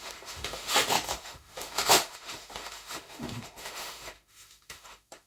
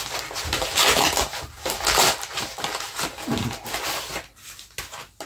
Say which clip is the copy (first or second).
first